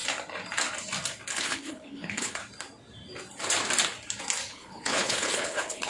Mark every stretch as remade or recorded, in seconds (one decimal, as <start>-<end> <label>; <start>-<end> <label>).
0.0-1.3 recorded; 1.3-2.4 remade; 2.4-4.5 recorded; 4.5-5.9 remade